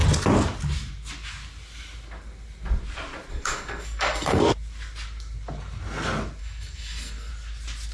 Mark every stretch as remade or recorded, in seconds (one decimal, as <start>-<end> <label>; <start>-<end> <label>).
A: 0.0-3.3 recorded; 3.3-4.4 remade; 4.4-6.4 recorded; 6.4-7.3 remade; 7.3-7.9 recorded